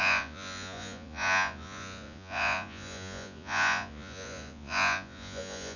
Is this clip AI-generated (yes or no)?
yes